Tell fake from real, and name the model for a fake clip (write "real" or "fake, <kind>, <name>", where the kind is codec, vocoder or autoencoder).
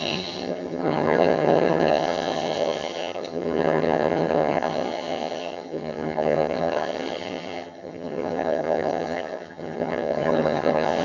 fake, vocoder, HiFi-GAN